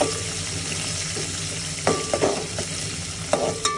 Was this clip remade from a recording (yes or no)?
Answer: no